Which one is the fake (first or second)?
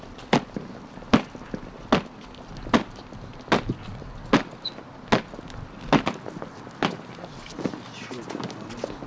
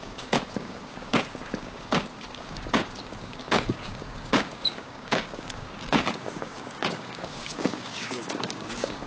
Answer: second